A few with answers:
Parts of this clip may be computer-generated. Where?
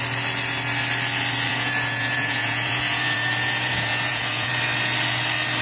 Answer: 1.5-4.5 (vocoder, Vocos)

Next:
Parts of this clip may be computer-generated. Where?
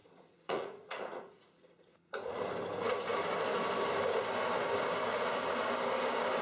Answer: 0.0-2.4 (vocoder, Vocos); 5.1-5.7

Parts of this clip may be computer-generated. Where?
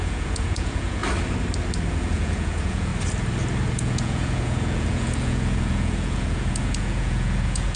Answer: 0.0-1.0 (vocoder, Vocos); 1.9-2.9; 3.7-7.8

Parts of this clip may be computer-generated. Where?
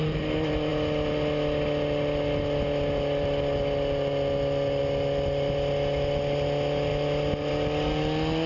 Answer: none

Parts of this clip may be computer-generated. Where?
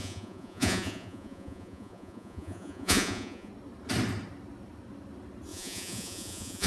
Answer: 0.0-3.5 (vocoder, Vocos); 5.5-6.7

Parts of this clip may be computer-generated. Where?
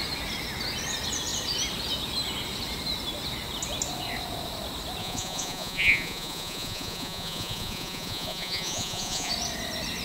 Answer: 5.0-9.3 (vocoder, Vocos)